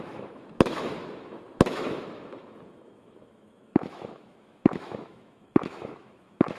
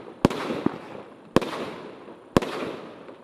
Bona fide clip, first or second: second